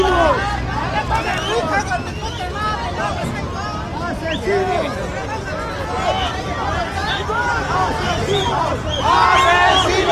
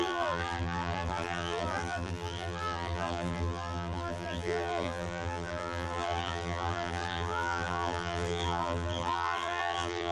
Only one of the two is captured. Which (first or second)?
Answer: first